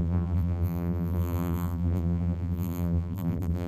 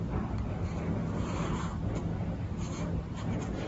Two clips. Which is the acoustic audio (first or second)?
second